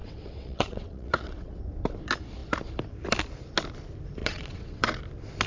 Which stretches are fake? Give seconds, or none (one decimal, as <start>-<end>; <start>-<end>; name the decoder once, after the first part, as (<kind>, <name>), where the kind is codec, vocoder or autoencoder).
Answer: 0.0-1.6 (vocoder, WaveNeXt); 4.2-5.0